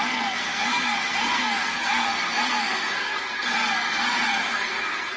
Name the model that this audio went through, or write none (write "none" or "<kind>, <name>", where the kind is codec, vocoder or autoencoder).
codec, SNAC